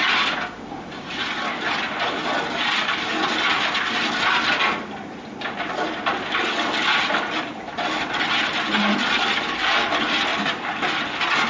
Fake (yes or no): no